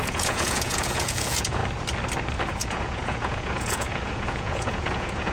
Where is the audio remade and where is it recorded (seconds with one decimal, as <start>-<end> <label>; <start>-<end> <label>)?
0.0-1.6 remade; 1.6-2.5 recorded; 2.5-5.3 remade